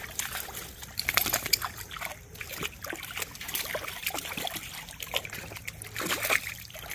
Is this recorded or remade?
remade